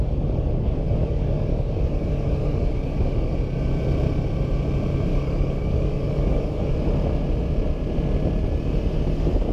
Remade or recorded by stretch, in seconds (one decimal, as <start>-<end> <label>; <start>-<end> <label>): 0.0-3.3 remade; 3.3-5.1 recorded; 5.1-6.7 remade; 6.7-9.5 recorded